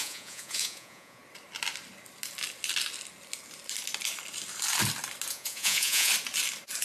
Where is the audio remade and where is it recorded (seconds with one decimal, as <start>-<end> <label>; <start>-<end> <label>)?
0.0-1.2 remade; 1.2-5.3 recorded; 5.3-6.1 remade; 6.1-6.8 recorded